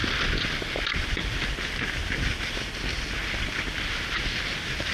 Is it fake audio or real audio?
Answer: real